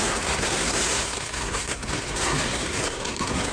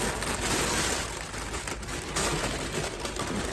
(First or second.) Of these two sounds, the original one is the second